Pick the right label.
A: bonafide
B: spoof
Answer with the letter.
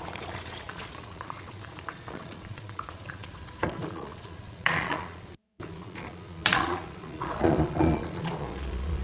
B